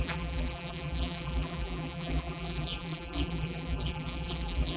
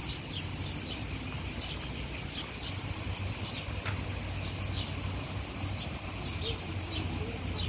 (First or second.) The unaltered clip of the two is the second